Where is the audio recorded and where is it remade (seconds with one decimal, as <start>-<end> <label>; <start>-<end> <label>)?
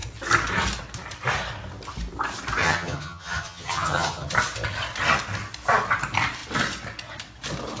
0.0-2.6 recorded; 2.6-4.3 remade; 4.3-7.8 recorded